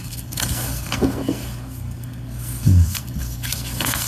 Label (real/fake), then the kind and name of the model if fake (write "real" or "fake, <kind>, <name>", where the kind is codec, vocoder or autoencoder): fake, codec, SNAC